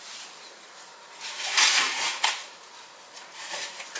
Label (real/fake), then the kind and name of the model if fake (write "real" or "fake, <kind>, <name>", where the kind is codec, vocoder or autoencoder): fake, vocoder, Vocos